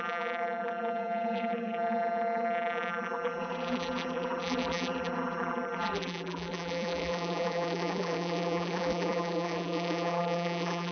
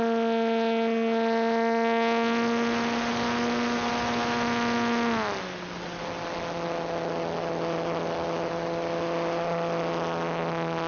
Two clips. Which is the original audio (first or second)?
second